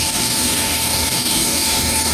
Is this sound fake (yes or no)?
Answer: yes